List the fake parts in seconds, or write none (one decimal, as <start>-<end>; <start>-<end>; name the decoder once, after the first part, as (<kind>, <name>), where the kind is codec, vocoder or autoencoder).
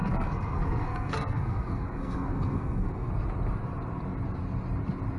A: 0.0-3.1 (codec, SNAC)